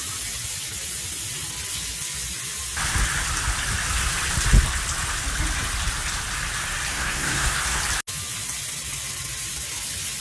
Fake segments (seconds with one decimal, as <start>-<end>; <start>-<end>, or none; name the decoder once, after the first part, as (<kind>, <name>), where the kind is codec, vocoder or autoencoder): 6.9-7.8 (codec, SNAC)